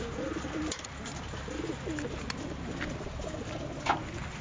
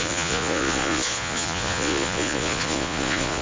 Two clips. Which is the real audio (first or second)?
first